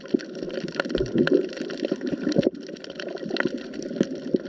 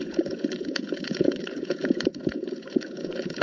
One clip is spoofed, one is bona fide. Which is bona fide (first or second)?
first